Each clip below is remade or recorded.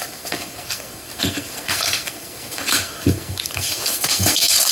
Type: remade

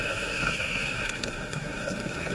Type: remade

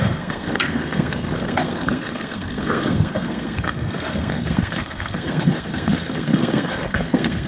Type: remade